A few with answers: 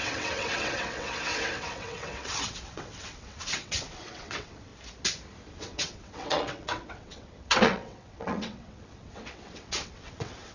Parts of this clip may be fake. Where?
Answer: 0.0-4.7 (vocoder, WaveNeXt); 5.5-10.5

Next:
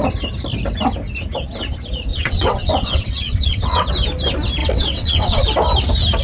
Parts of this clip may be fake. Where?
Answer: 2.1-3.9 (vocoder, WaveNeXt); 4.6-5.4